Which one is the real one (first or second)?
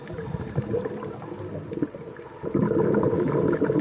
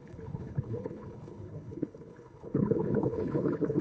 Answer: first